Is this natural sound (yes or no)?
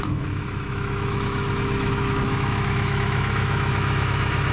no